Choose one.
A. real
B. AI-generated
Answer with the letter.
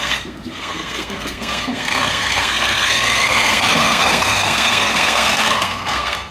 B